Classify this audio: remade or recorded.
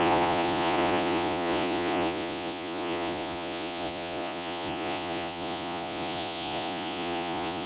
remade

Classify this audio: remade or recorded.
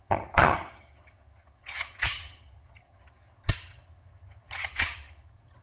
remade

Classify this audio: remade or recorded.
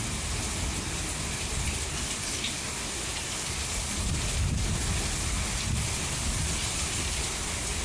recorded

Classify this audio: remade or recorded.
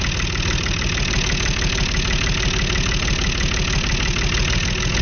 recorded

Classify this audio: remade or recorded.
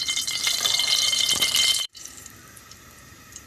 remade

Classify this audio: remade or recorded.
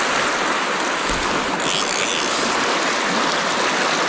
recorded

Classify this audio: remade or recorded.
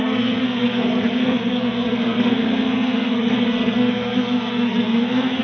remade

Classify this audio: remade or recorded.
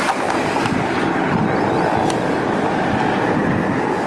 recorded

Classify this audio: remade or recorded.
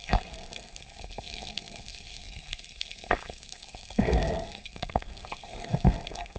remade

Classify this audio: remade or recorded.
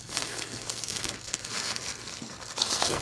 remade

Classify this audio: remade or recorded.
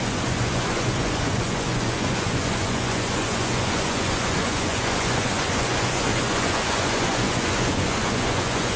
remade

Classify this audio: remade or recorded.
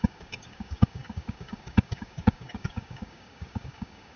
remade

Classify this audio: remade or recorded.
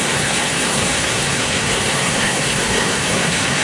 remade